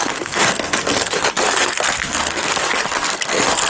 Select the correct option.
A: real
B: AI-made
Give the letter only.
B